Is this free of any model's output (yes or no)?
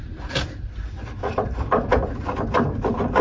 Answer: no